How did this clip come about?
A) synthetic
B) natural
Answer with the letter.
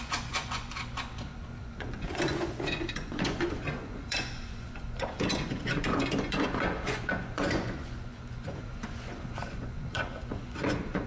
A